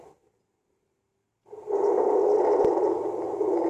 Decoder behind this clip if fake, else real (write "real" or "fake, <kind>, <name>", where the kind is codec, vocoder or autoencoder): real